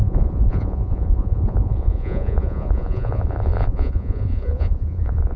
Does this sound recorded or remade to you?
remade